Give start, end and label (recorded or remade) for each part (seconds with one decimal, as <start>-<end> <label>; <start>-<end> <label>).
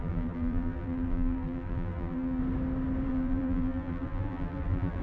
0.0-2.4 remade; 2.4-3.1 recorded; 3.1-5.0 remade